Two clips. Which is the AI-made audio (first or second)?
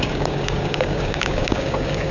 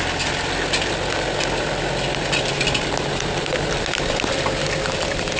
first